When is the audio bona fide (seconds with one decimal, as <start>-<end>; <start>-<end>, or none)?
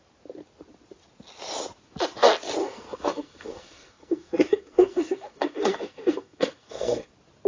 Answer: 0.0-2.6; 7.1-7.5